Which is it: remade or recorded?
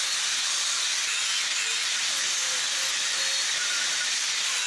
recorded